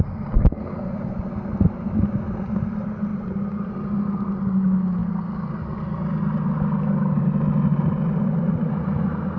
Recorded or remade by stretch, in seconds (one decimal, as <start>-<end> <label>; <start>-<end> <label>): 0.0-3.1 recorded; 3.1-3.7 remade; 3.7-9.4 recorded